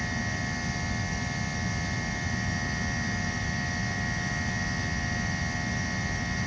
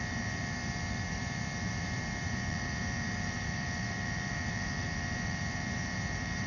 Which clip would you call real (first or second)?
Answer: first